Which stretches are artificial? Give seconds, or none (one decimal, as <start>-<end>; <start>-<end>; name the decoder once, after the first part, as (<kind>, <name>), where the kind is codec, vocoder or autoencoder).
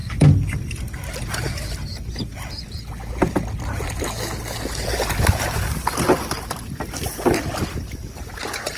none